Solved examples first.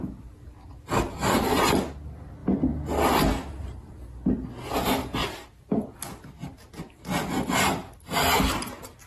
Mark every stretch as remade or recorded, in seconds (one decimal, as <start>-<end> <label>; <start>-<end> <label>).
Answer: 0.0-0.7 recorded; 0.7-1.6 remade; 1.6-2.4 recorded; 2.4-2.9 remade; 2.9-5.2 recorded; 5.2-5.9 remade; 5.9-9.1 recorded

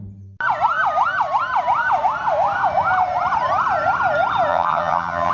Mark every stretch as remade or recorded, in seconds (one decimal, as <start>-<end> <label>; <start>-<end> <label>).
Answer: 0.0-4.5 recorded; 4.5-5.3 remade

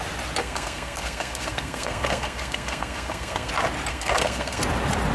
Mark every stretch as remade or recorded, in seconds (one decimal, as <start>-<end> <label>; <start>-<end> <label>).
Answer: 0.0-0.4 recorded; 0.4-3.5 remade; 3.5-3.9 recorded; 3.9-4.6 remade; 4.6-5.1 recorded

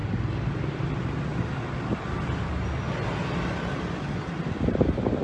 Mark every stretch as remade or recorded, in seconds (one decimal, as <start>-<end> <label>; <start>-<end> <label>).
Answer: 0.0-1.3 remade; 1.3-4.4 recorded; 4.4-5.2 remade

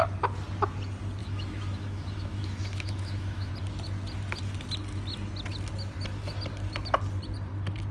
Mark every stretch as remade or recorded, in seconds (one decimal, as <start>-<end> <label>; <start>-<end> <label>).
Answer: 0.0-1.2 recorded; 1.2-3.5 remade; 3.5-7.9 recorded

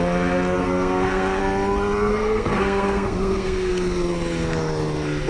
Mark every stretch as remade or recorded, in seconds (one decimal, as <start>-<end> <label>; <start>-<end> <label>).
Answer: 0.0-0.6 recorded; 0.6-1.4 remade; 1.4-2.1 recorded; 2.1-3.7 remade; 3.7-5.3 recorded

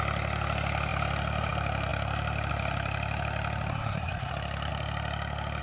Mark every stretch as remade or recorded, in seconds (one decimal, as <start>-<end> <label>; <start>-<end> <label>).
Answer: 0.0-3.7 recorded; 3.7-4.3 remade; 4.3-5.6 recorded

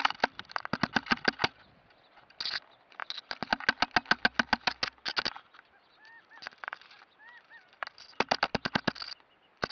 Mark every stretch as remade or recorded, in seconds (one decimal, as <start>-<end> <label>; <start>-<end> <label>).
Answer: 0.0-9.7 recorded